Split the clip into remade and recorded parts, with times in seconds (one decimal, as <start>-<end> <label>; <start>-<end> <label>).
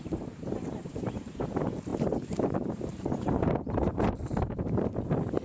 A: 0.0-3.9 remade; 3.9-5.4 recorded